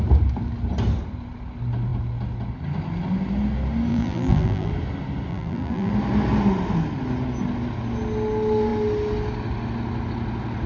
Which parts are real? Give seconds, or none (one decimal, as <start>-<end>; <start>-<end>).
0.0-3.9; 4.7-5.3; 5.9-10.7